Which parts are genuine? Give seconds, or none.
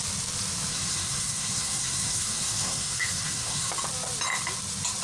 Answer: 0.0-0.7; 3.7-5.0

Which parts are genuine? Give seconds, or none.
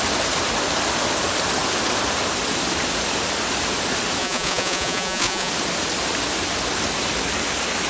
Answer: 0.0-4.2; 5.5-7.9